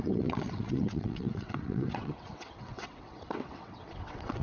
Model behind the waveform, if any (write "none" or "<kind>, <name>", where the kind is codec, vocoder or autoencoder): vocoder, WaveNeXt